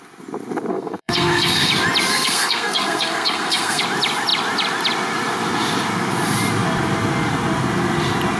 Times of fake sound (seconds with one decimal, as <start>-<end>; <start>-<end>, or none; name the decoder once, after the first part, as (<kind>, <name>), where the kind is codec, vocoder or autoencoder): 0.7-1.7 (codec, SNAC); 2.1-3.8